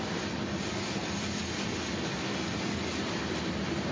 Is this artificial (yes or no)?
no